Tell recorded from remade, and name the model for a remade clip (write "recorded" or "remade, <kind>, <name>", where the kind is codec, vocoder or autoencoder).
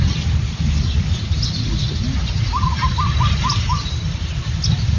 recorded